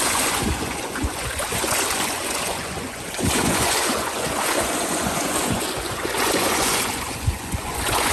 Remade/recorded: remade